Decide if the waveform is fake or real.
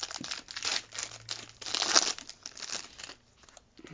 real